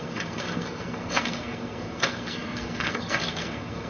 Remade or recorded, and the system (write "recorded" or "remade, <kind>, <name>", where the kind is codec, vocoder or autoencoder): remade, codec, SNAC